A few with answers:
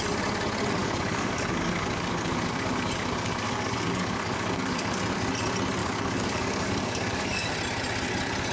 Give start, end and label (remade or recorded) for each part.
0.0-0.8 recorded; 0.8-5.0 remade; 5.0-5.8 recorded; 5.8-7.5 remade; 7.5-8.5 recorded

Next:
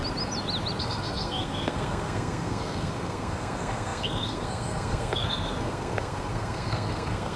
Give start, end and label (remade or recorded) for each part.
0.0-0.8 recorded; 0.8-7.4 remade